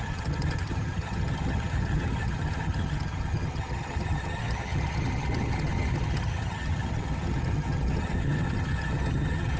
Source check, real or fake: fake